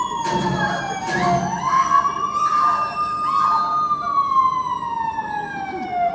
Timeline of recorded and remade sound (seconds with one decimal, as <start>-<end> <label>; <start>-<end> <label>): 0.0-6.1 recorded